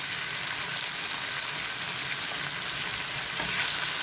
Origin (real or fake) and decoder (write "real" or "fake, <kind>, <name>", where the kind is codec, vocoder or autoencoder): real